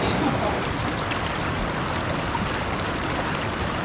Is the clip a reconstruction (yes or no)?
no